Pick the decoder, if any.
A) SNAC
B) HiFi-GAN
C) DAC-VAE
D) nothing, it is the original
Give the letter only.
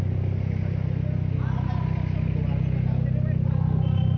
D